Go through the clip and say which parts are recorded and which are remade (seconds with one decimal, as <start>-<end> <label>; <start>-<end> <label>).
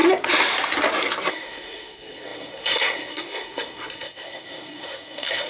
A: 0.0-1.3 recorded; 1.3-5.5 remade